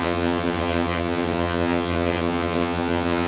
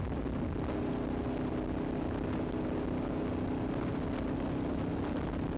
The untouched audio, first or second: second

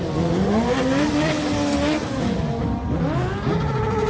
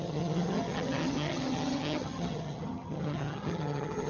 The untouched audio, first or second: first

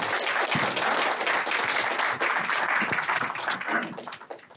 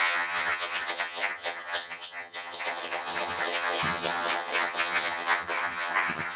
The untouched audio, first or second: first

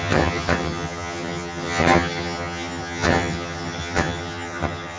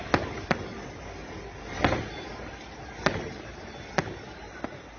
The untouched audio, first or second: second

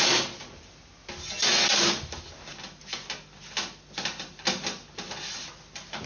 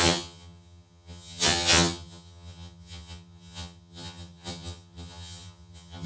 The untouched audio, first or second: first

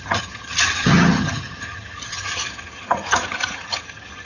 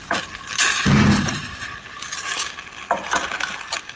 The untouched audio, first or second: second